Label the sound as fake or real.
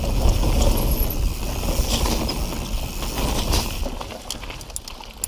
real